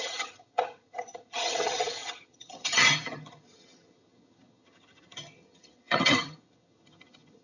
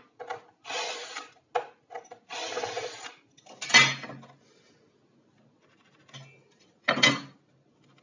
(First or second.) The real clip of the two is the second